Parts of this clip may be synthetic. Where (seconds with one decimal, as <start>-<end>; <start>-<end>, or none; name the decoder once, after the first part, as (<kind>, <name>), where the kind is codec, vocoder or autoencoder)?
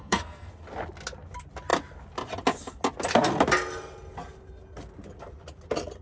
0.0-0.5 (codec, SNAC)